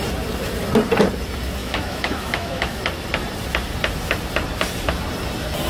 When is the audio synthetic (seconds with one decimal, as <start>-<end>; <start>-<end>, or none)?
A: 1.6-2.8